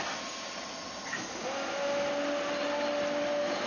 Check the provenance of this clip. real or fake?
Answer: real